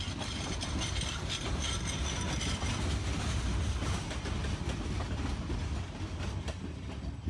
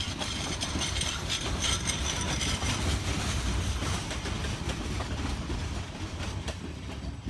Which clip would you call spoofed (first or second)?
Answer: second